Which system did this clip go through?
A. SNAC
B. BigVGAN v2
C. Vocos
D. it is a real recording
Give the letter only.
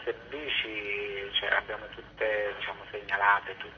D